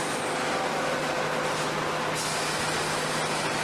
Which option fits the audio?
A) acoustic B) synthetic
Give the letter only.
A